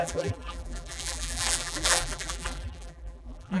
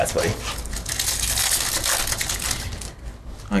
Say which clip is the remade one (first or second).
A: first